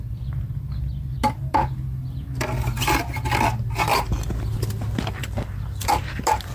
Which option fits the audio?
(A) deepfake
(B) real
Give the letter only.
B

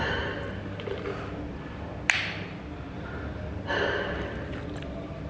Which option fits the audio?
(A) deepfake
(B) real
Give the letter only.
B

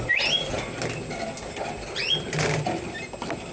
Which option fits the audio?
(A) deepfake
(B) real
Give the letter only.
B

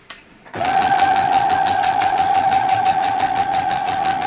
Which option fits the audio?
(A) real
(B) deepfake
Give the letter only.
B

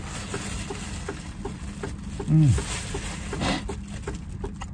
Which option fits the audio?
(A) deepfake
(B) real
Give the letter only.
B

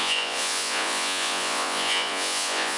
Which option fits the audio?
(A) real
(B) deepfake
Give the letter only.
B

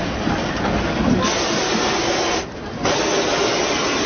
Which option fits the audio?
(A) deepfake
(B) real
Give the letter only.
B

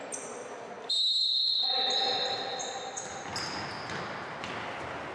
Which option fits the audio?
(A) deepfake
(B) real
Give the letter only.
B